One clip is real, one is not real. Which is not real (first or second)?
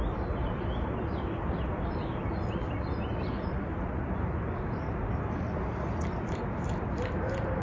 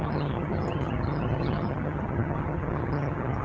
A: second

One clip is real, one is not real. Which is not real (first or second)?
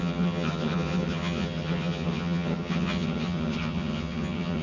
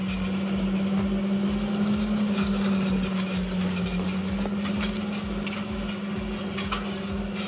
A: first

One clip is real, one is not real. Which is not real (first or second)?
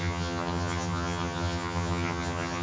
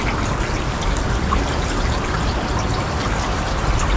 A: first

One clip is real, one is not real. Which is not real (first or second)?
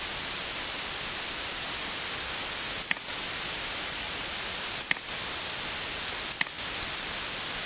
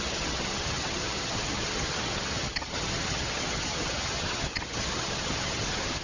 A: second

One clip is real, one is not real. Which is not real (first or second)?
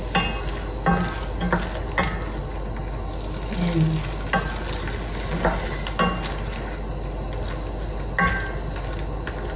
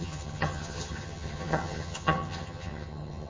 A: second